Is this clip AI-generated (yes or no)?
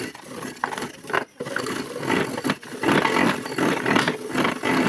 no